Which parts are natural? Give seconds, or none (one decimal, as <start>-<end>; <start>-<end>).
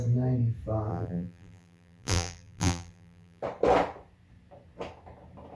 0.0-0.9; 3.4-5.5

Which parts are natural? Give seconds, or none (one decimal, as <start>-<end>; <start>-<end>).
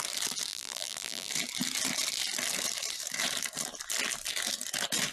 0.0-0.5; 1.3-5.1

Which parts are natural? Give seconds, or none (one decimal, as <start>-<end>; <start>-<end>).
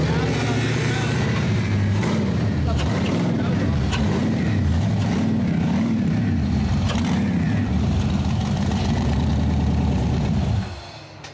0.0-0.7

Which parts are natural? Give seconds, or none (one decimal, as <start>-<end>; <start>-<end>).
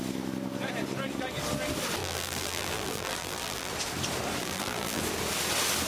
0.0-2.0; 3.7-4.4; 5.0-5.9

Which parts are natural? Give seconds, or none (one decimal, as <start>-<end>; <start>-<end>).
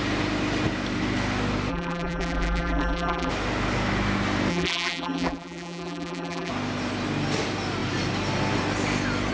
0.0-1.7; 3.3-4.5; 6.5-9.3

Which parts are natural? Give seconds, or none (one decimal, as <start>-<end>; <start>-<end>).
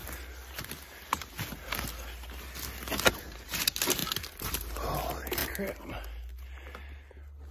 0.0-3.1; 4.0-4.5; 5.4-7.5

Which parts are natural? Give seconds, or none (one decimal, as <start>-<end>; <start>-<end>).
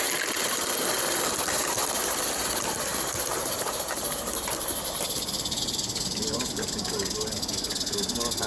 0.0-2.9; 6.9-8.5